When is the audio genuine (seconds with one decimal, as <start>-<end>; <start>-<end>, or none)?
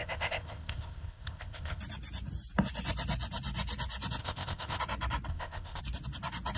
1.8-4.2; 4.8-5.3; 5.8-6.6